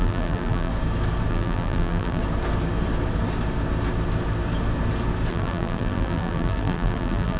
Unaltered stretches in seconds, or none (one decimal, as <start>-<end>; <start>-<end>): 0.7-1.3; 2.2-5.3